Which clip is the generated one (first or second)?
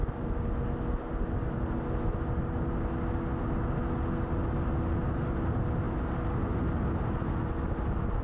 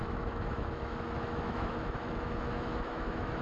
second